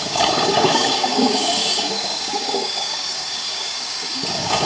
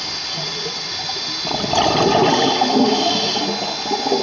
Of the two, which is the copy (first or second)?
first